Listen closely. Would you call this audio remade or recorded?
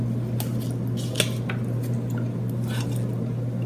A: recorded